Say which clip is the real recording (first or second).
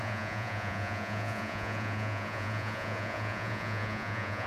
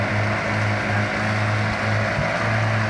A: second